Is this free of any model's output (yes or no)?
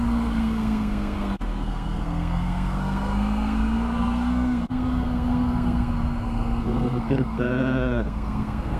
no